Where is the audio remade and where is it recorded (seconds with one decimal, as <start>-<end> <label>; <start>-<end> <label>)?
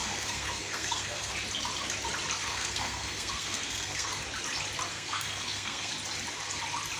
0.0-1.3 remade; 1.3-2.4 recorded; 2.4-4.2 remade; 4.2-4.9 recorded; 4.9-5.9 remade; 5.9-7.0 recorded